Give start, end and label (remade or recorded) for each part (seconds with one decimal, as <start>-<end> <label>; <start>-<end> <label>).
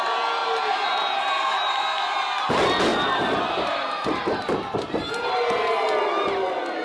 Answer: 0.0-0.4 recorded; 0.4-1.8 remade; 1.8-2.9 recorded; 2.9-5.1 remade; 5.1-6.8 recorded